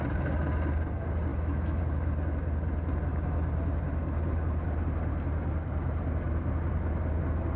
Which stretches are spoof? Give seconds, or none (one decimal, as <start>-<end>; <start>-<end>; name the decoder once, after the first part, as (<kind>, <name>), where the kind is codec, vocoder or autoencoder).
1.3-1.8 (autoencoder, DAC-VAE)